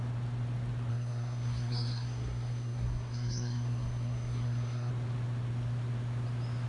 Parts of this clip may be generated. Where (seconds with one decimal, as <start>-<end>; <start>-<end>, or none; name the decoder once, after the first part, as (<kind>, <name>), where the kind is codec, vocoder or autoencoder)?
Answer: 0.9-4.9 (codec, SNAC)